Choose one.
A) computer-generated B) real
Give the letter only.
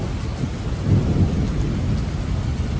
B